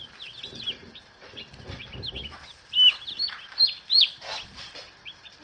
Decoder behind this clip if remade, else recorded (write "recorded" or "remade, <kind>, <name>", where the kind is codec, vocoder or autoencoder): recorded